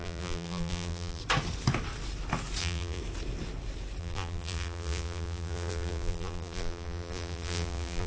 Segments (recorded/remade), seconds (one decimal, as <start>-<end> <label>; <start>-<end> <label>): 0.0-1.2 remade; 1.2-2.6 recorded; 2.6-3.0 remade; 3.0-4.0 recorded; 4.0-8.1 remade